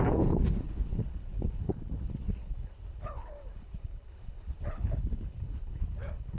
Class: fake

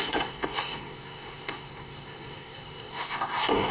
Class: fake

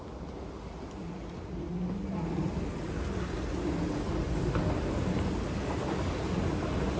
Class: real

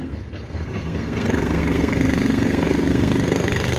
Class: fake